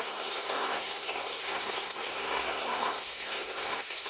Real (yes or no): no